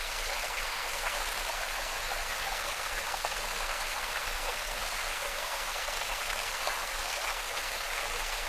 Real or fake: fake